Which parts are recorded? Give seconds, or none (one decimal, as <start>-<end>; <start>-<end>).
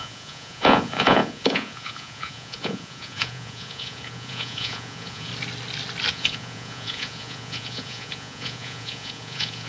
5.3-6.1